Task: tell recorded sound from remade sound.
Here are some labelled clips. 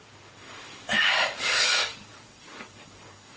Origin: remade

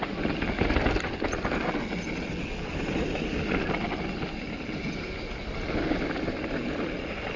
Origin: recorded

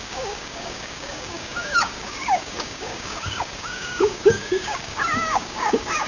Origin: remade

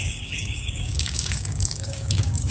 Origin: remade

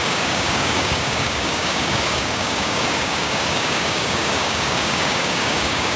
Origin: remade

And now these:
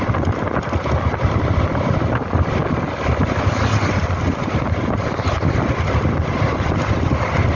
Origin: recorded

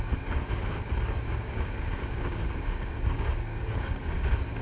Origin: remade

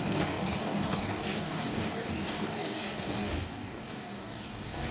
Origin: remade